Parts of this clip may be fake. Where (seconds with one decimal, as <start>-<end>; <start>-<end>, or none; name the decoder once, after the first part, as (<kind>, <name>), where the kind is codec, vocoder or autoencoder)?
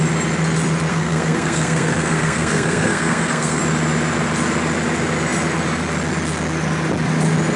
0.9-3.6 (codec, SNAC)